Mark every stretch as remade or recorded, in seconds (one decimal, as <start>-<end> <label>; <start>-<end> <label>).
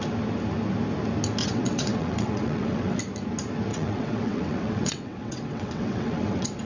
0.0-1.4 recorded; 1.4-3.0 remade; 3.0-3.7 recorded; 3.7-6.6 remade